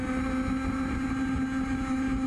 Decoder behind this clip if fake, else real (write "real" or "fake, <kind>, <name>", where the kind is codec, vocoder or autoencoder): real